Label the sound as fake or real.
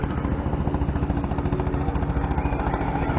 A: real